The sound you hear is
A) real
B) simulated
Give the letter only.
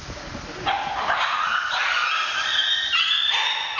A